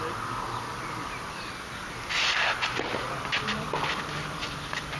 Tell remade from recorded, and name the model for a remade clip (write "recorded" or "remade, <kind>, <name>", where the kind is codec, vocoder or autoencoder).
recorded